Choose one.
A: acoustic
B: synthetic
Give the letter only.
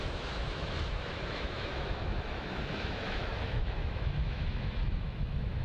B